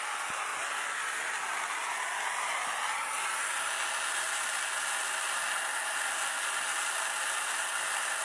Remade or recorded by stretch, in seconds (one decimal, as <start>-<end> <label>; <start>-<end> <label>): 0.0-8.2 recorded